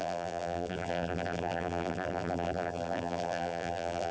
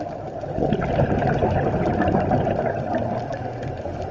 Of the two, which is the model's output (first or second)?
first